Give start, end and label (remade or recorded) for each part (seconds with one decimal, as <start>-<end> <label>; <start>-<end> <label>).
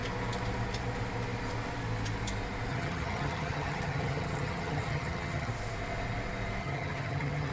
0.0-2.7 recorded; 2.7-5.5 remade; 5.5-6.6 recorded; 6.6-7.5 remade